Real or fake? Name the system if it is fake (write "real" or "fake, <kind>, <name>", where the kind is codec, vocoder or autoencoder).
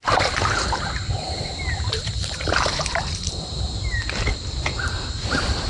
fake, vocoder, BigVGAN v2